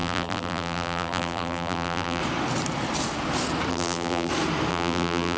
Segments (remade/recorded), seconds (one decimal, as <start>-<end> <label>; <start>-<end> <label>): 0.0-2.2 remade; 2.2-3.7 recorded; 3.7-4.3 remade; 4.3-4.7 recorded; 4.7-5.4 remade